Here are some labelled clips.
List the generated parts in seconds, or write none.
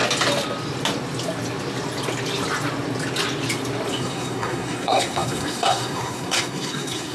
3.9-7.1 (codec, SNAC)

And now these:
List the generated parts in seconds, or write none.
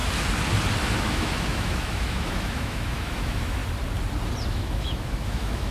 1.0-3.6 (autoencoder, DAC-VAE); 4.5-5.7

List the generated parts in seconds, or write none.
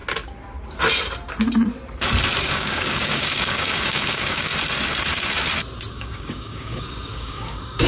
2.4-4.5 (codec, DAC); 5.9-7.9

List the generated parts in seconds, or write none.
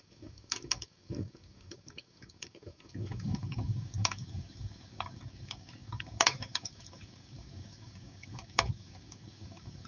0.0-9.9 (codec, DAC)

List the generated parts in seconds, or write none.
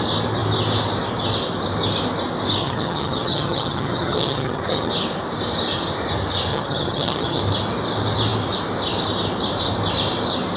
2.6-4.9 (vocoder, HiFi-GAN); 6.5-7.4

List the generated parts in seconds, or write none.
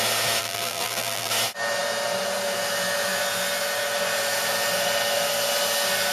0.4-1.3 (vocoder, BigVGAN v2)